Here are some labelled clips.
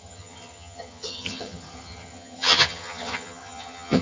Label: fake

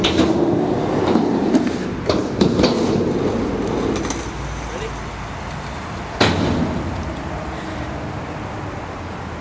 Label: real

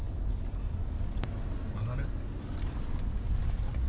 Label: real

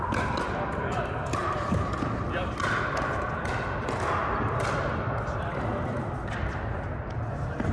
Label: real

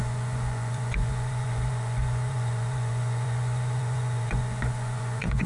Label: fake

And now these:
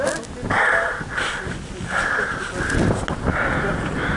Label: real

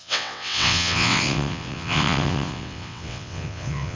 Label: fake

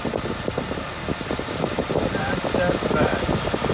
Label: real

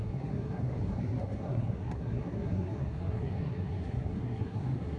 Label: fake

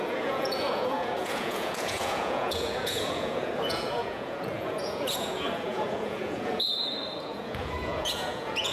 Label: fake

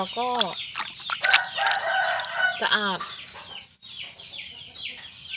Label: real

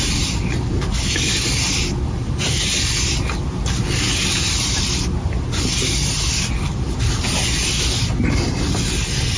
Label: real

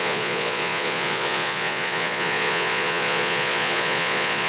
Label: fake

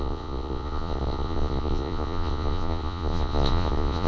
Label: fake